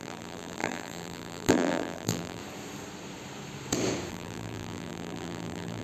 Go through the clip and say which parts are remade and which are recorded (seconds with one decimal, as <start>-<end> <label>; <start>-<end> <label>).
0.0-2.4 remade; 2.4-4.1 recorded; 4.1-5.8 remade